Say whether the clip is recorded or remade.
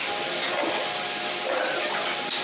recorded